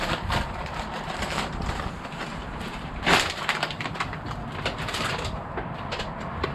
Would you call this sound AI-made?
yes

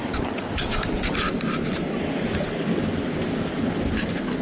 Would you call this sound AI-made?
no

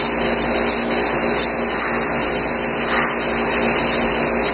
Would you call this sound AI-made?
no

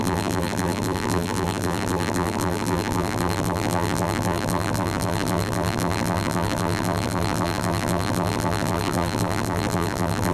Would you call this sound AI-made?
yes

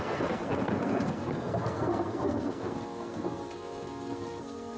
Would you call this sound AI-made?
yes